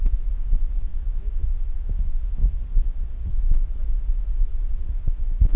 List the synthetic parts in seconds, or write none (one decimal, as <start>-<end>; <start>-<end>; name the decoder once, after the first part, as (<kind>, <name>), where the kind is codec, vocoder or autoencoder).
0.9-2.6 (autoencoder, DAC-VAE)